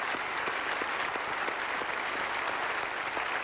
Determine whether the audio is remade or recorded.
recorded